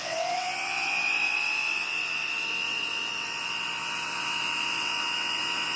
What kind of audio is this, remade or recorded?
remade